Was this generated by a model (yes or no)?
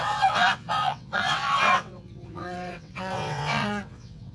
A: yes